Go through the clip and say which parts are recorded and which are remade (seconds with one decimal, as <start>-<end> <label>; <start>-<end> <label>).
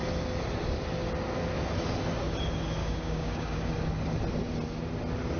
0.0-2.8 recorded; 2.8-3.7 remade; 3.7-5.4 recorded